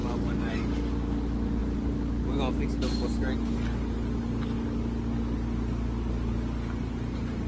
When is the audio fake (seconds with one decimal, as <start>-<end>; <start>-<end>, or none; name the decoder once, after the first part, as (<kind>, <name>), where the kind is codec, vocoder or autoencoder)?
none